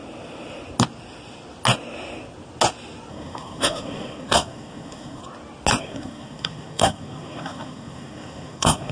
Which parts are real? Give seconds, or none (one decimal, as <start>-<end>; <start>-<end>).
0.0-3.1; 5.2-5.8

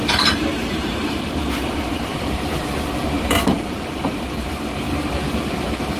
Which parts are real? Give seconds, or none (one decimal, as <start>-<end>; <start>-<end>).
1.5-2.1

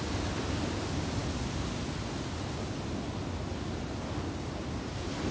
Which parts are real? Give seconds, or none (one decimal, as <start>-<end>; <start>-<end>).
0.0-5.3

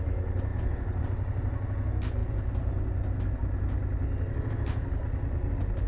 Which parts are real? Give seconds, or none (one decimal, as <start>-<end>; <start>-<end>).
0.0-0.5; 1.0-5.9

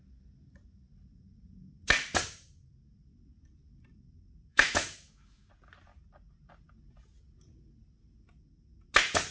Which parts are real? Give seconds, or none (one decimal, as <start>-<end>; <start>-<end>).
0.0-4.5; 5.5-9.3